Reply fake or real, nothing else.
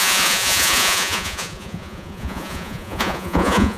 fake